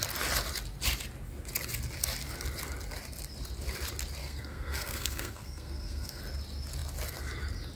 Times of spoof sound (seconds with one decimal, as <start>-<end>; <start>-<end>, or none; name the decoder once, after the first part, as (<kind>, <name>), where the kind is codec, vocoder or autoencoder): 4.2-6.2 (codec, SNAC)